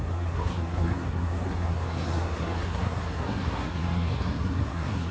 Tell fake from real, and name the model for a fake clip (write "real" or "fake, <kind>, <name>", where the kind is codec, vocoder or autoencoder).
fake, codec, SNAC